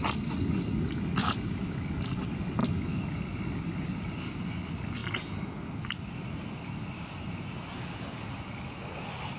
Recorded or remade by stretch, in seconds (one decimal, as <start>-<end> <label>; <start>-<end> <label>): 0.0-9.4 recorded